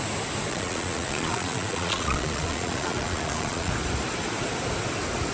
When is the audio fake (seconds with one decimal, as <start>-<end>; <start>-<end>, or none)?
0.5-3.7

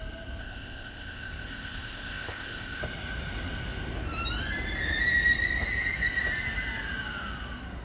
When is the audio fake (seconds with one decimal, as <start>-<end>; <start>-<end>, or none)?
0.4-2.8

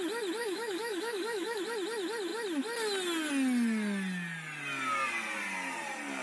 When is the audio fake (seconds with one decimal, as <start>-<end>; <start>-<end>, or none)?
0.4-1.6

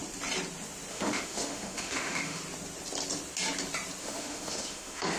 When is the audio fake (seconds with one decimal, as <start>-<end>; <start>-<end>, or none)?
0.9-2.4; 4.0-5.2

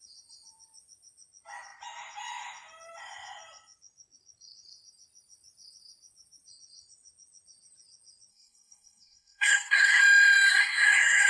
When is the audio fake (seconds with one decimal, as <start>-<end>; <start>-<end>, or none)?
8.3-10.0; 10.5-11.3